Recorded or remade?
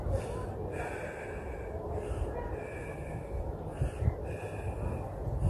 recorded